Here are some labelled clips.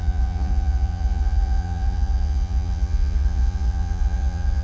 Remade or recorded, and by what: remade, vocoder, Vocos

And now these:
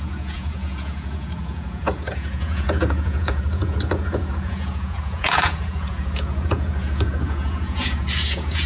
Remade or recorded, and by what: remade, vocoder, Vocos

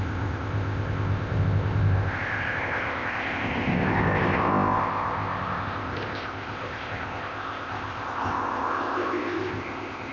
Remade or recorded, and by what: remade, codec, ZipCodec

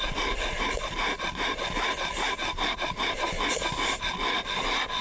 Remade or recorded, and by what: recorded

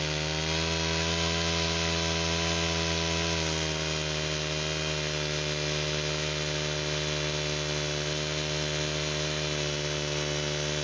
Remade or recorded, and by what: recorded